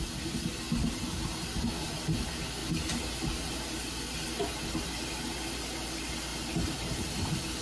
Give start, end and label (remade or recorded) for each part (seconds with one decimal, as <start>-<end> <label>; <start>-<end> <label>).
0.0-7.6 recorded